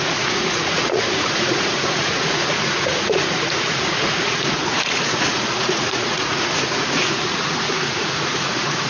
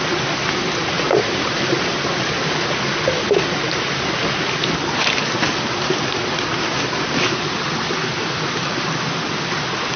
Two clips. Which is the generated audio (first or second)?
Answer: first